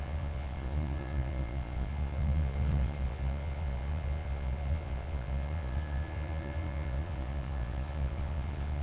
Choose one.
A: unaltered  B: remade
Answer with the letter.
B